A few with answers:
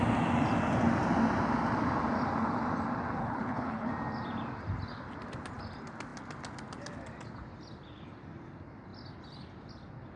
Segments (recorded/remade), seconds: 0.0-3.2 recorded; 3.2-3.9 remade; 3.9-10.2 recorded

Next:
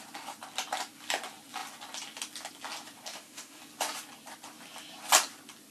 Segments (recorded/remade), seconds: 0.0-3.1 recorded; 3.1-3.6 remade; 3.6-5.7 recorded